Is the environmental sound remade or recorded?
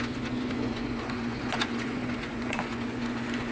remade